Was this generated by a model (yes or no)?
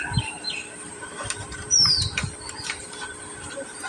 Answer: yes